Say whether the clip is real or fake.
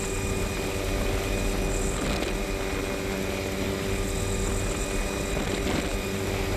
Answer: real